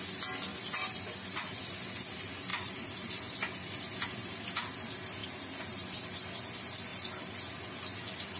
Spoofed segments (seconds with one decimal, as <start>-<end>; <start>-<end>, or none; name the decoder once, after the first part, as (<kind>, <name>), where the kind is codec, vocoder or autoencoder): 0.5-1.6 (vocoder, BigVGAN v2); 2.5-4.4